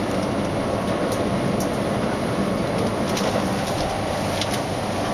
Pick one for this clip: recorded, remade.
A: recorded